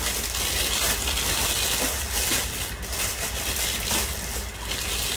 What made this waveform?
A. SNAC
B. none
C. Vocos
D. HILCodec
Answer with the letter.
B